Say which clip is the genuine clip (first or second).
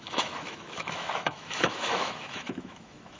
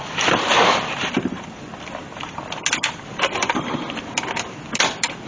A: second